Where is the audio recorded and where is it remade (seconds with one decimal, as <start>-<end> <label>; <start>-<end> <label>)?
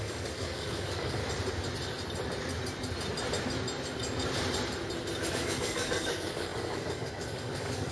0.0-1.2 remade; 1.2-5.3 recorded; 5.3-7.9 remade